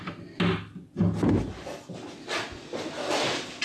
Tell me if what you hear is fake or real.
real